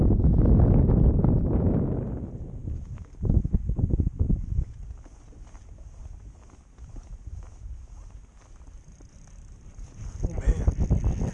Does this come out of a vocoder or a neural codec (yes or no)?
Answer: no